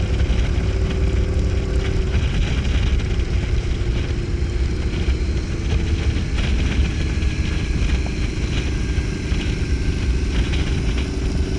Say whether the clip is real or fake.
real